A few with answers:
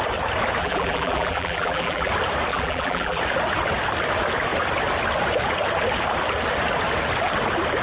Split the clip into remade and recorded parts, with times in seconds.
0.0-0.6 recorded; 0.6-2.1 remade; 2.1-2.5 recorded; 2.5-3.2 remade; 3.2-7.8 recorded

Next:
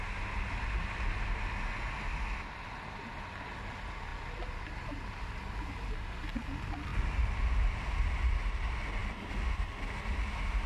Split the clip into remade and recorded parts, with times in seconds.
0.0-10.7 recorded

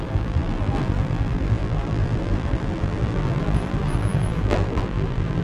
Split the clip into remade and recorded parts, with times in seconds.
0.0-5.4 remade

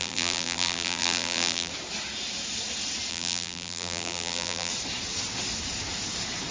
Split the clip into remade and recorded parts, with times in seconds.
0.0-1.7 remade; 1.7-3.1 recorded; 3.1-4.7 remade; 4.7-6.5 recorded